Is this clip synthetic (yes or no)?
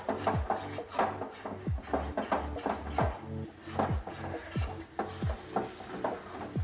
no